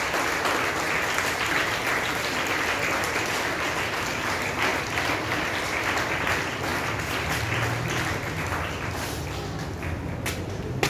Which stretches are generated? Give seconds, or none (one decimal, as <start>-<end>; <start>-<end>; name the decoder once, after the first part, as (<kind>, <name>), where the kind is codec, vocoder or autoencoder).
none